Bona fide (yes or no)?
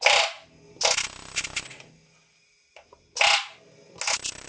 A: yes